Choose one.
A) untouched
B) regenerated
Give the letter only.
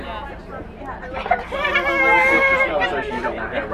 A